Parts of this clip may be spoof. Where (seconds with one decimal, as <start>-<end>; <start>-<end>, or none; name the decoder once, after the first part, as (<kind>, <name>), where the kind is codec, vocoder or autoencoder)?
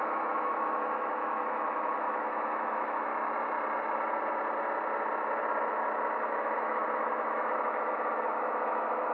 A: 0.0-3.1 (autoencoder, DAC-VAE); 6.3-9.1